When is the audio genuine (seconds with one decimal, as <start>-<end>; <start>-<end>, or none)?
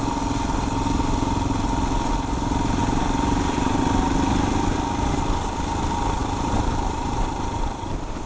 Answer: 0.0-2.8; 3.8-6.2; 7.9-8.3